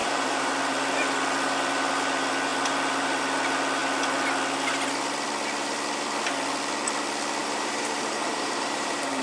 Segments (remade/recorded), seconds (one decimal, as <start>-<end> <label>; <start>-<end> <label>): 0.0-0.5 remade; 0.5-7.4 recorded; 7.4-9.2 remade